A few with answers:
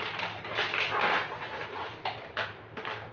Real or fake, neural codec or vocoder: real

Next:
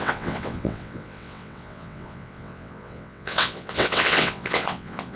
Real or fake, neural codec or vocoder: fake, vocoder, WaveNeXt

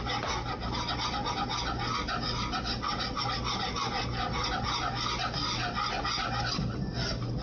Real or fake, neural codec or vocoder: real